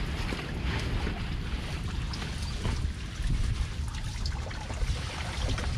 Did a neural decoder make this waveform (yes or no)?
no